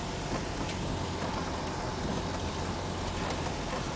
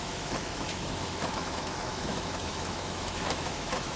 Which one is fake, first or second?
second